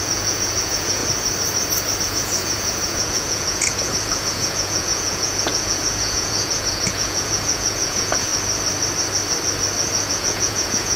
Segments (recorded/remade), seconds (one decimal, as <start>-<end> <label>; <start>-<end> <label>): 0.0-1.0 remade; 1.0-2.0 recorded; 2.0-8.3 remade; 8.3-10.1 recorded; 10.1-11.0 remade